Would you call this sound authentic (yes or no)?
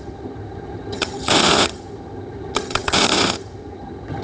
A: no